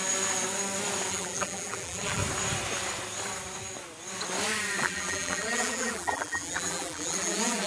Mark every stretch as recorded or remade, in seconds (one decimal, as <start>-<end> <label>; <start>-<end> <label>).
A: 0.0-1.1 recorded; 1.1-2.2 remade; 2.2-4.8 recorded; 4.8-7.7 remade